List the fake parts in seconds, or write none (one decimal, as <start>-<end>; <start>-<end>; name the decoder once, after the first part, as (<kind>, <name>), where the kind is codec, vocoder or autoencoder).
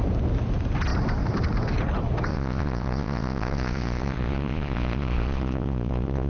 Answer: 2.3-6.3 (vocoder, Vocos)